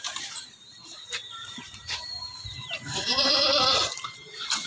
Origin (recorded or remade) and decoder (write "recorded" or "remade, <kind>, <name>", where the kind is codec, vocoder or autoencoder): remade, vocoder, BigVGAN v2